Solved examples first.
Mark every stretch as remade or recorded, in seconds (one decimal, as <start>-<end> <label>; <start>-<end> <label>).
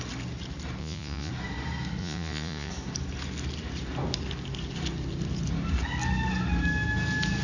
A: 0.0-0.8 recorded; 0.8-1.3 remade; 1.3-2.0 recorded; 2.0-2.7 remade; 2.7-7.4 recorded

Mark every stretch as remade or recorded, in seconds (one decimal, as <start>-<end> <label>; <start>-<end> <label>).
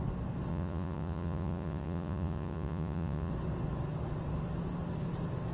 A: 0.0-0.5 recorded; 0.5-3.3 remade; 3.3-5.5 recorded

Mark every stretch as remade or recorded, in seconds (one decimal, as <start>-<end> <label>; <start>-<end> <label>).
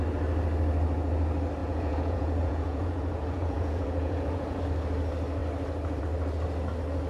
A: 0.0-1.6 recorded; 1.6-4.6 remade; 4.6-7.1 recorded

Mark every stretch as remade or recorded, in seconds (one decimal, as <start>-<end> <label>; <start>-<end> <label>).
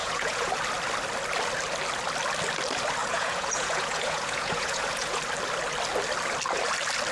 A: 0.0-0.5 remade; 0.5-3.0 recorded; 3.0-5.2 remade; 5.2-7.1 recorded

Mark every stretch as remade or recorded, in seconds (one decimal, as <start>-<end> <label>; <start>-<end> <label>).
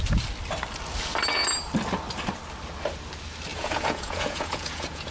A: 0.0-3.5 recorded; 3.5-5.1 remade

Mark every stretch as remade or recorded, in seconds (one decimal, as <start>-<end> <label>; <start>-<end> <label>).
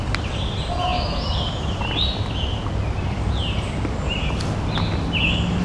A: 0.0-5.6 recorded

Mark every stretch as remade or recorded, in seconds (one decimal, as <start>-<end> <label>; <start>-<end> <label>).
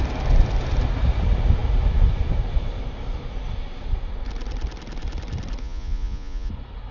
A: 0.0-5.6 recorded; 5.6-6.5 remade; 6.5-6.9 recorded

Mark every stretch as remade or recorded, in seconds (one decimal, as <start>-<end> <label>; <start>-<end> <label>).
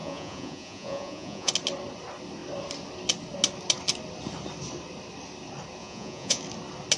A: 0.0-1.5 remade; 1.5-5.8 recorded; 5.8-6.4 remade; 6.4-7.0 recorded